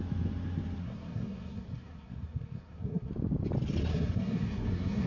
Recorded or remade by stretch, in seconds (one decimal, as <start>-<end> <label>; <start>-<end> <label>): 0.0-0.8 recorded; 0.8-3.1 remade; 3.1-3.9 recorded; 3.9-5.1 remade